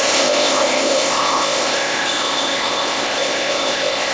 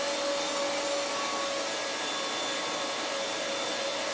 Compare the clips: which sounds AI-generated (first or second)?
first